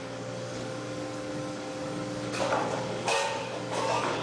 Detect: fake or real fake